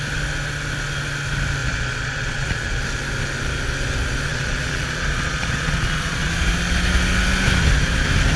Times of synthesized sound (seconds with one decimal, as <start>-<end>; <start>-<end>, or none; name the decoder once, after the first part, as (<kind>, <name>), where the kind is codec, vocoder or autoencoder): 1.6-2.8 (vocoder, Vocos); 4.3-6.3